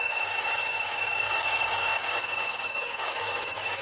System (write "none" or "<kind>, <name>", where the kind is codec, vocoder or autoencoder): codec, DAC